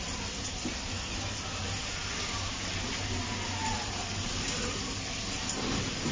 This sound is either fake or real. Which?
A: real